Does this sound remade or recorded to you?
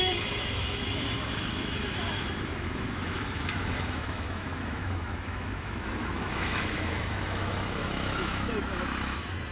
remade